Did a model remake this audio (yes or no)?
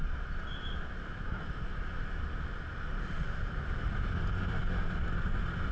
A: no